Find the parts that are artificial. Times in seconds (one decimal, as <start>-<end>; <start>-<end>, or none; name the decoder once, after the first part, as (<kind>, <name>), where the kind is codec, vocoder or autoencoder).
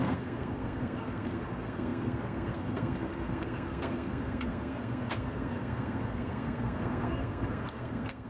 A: 0.0-8.3 (codec, SNAC)